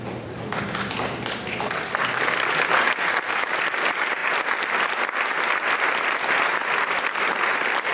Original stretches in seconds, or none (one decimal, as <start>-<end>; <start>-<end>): 0.0-7.9